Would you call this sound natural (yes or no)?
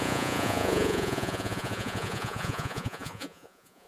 no